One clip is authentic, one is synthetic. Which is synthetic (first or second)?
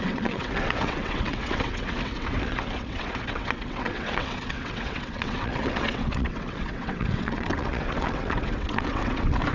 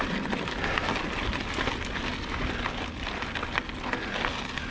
first